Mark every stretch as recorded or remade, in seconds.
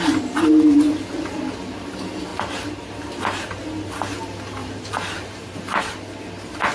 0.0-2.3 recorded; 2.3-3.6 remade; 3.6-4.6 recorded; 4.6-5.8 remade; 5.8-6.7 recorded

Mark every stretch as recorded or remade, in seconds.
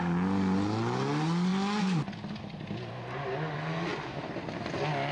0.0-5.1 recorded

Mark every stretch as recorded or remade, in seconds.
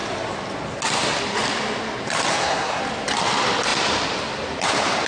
0.0-2.3 recorded; 2.3-2.8 remade; 2.8-5.1 recorded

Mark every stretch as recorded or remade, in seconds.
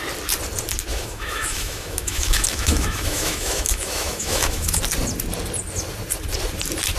0.0-0.9 recorded; 0.9-4.8 remade; 4.8-7.0 recorded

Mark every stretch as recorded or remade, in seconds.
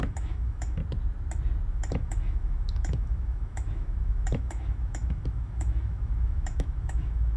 0.0-0.8 remade; 0.8-1.7 recorded; 1.7-7.4 remade